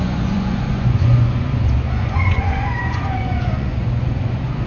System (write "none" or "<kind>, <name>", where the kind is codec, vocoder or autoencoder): vocoder, Vocos